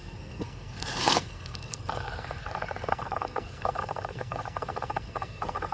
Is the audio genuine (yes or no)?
no